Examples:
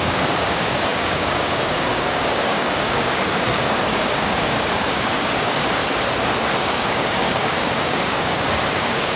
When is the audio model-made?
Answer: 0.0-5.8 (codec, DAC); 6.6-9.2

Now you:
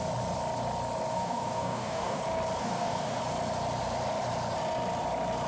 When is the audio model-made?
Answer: 1.1-2.2 (codec, DAC); 2.6-3.2

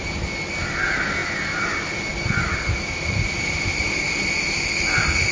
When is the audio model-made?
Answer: none

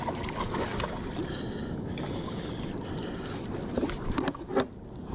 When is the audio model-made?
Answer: none

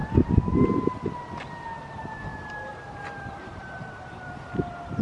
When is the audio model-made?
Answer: 2.3-4.3 (vocoder, BigVGAN v2)